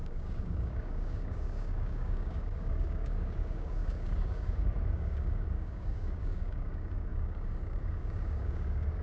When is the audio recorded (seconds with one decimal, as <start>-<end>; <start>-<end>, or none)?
none